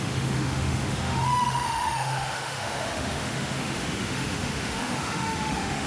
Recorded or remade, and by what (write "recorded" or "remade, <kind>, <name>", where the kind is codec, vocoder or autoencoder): remade, autoencoder, DAC-VAE